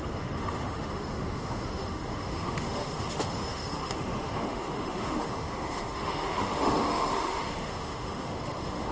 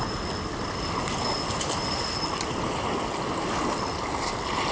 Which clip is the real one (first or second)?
second